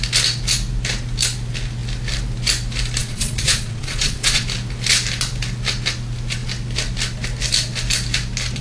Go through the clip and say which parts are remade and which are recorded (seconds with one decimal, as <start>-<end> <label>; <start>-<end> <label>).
0.0-3.0 recorded; 3.0-4.4 remade; 4.4-8.6 recorded